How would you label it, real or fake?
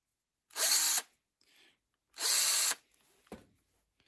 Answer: real